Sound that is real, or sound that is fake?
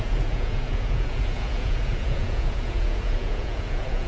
fake